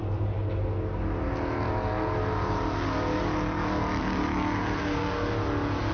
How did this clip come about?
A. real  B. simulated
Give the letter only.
A